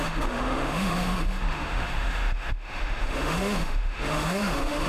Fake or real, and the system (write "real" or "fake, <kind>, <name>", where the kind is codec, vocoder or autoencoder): fake, autoencoder, DAC-VAE